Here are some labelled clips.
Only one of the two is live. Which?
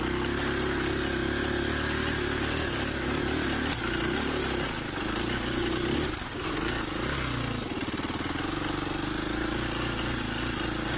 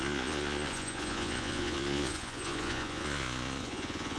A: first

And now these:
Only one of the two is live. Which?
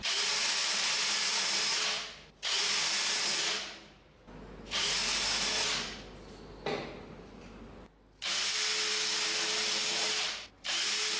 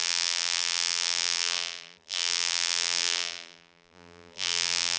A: first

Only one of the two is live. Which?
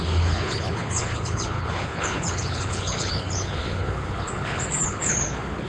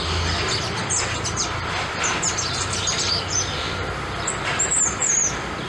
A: second